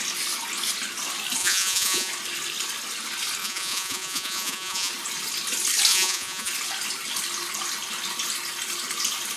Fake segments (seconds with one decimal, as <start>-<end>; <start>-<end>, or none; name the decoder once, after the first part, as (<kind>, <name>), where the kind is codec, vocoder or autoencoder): 1.4-2.1 (vocoder, Vocos); 3.4-4.9; 5.9-6.5